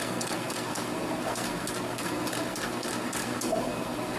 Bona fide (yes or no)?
no